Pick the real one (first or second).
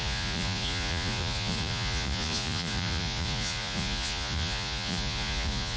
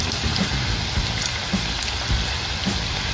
second